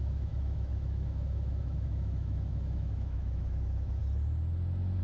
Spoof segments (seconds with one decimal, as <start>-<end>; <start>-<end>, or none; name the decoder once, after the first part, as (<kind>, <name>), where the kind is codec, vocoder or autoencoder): 0.0-4.0 (autoencoder, DAC-VAE)